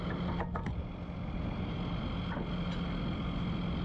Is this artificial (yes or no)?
no